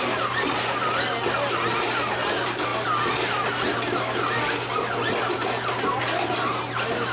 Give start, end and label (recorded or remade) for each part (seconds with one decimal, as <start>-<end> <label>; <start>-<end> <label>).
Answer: 0.0-7.1 recorded